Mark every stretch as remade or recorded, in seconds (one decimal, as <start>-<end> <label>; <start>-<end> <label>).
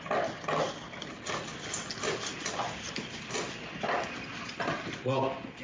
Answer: 0.0-5.6 recorded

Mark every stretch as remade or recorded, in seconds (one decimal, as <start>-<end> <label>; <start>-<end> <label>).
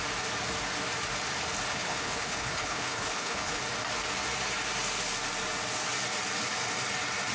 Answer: 0.0-1.7 recorded; 1.7-3.6 remade; 3.6-7.3 recorded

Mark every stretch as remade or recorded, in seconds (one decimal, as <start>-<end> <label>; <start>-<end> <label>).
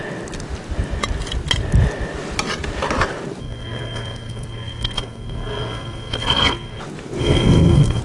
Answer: 0.0-3.4 recorded; 3.4-6.8 remade; 6.8-7.2 recorded; 7.2-8.0 remade